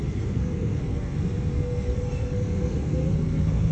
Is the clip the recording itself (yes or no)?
no